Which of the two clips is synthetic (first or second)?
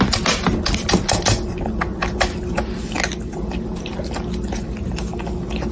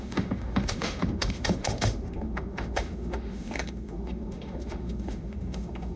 second